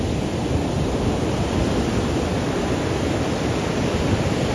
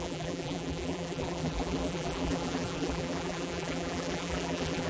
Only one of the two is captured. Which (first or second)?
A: first